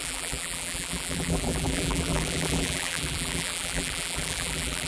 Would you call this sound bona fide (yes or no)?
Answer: no